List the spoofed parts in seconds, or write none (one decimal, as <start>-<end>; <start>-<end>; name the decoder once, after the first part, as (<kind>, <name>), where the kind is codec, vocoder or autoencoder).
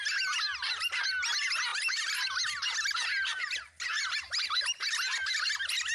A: none